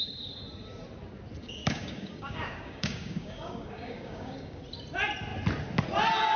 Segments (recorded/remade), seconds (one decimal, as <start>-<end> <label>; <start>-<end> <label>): 0.0-1.4 recorded; 1.4-4.6 remade; 4.6-6.4 recorded